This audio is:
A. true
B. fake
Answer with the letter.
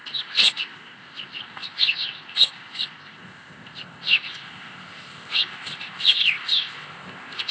B